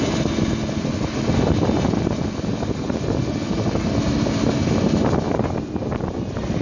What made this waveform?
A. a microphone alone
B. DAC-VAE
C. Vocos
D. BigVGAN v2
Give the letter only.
A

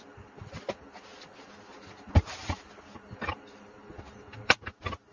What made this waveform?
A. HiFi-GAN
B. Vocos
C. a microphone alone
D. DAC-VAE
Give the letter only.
C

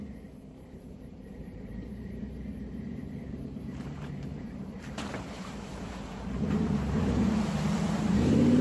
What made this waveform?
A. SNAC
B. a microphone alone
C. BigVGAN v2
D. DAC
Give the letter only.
C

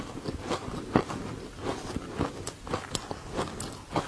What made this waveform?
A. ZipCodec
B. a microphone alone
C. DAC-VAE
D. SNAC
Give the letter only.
B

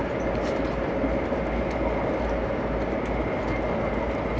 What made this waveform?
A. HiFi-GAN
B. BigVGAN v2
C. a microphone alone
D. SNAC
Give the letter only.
C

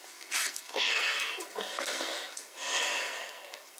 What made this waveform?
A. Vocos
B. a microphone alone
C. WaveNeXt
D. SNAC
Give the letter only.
D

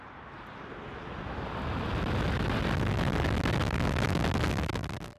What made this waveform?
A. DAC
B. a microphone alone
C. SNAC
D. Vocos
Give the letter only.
B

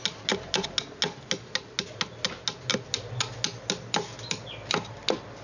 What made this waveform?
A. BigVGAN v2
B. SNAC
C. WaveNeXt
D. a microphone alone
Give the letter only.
D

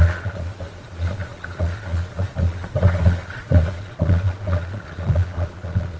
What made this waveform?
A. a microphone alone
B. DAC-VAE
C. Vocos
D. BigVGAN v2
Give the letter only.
C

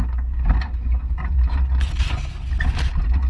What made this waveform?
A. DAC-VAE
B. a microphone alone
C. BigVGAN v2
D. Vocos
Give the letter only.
B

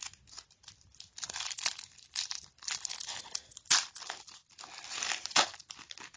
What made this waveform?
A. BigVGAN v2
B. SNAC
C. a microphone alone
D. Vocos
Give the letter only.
C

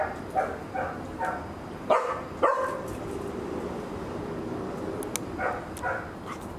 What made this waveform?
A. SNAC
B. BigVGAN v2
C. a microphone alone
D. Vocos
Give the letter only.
C